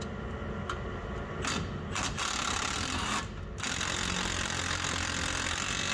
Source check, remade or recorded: recorded